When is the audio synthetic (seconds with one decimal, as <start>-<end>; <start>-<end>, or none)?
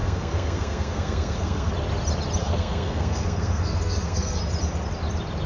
0.0-1.7; 2.4-4.4